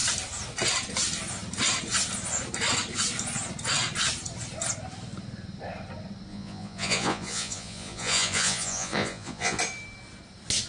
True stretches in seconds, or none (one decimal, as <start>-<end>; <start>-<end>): 0.0-6.3; 9.6-10.7